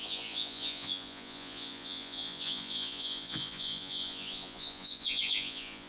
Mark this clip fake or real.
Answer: fake